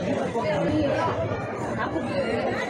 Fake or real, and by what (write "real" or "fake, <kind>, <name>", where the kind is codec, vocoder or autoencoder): fake, vocoder, BigVGAN v2